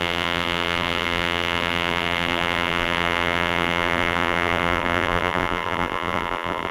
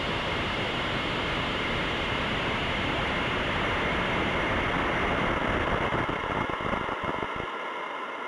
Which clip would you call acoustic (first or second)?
second